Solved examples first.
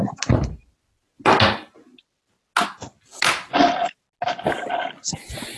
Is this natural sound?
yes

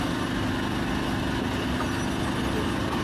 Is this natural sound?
yes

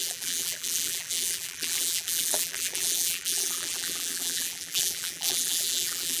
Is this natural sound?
no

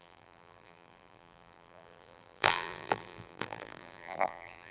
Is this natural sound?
no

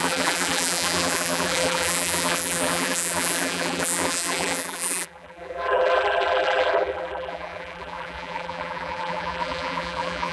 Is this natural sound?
no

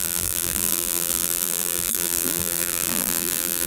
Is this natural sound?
no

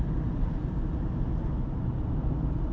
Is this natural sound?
no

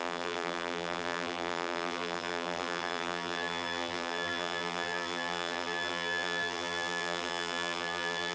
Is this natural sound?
no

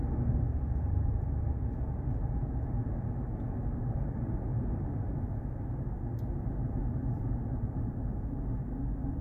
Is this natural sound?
yes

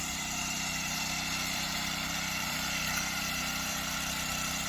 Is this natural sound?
no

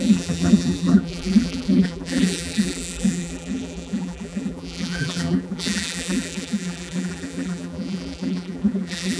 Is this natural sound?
no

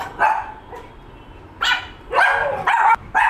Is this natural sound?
yes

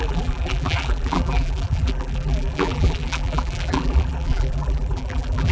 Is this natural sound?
no